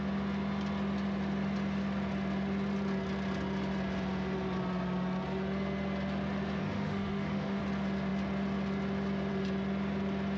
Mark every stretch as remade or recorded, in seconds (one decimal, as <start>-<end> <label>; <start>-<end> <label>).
0.0-6.6 recorded; 6.6-7.6 remade; 7.6-10.4 recorded